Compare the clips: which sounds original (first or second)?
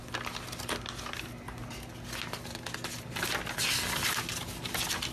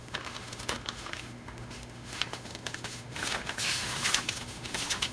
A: first